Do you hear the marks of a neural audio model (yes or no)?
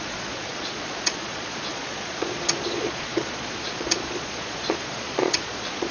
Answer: yes